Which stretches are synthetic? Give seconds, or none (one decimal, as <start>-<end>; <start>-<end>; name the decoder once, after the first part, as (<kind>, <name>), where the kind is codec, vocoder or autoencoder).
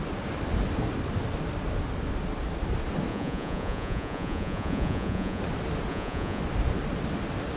3.1-5.4 (vocoder, Vocos); 5.9-6.4